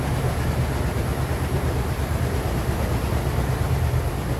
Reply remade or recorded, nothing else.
recorded